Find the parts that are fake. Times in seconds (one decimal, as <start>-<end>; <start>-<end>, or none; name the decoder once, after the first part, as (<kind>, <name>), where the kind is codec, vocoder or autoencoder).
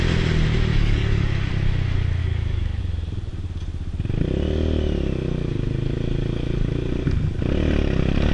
0.7-1.5 (codec, DAC); 2.2-2.8